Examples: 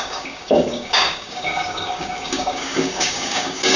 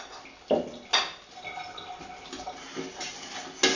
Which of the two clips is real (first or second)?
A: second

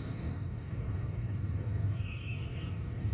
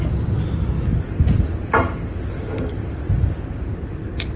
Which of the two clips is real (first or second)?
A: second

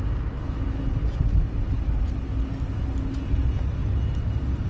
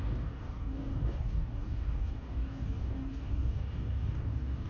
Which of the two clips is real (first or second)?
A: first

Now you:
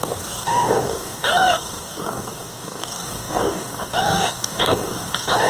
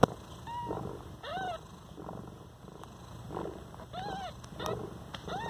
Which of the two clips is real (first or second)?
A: second